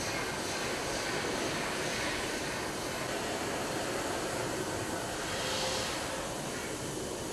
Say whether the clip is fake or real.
real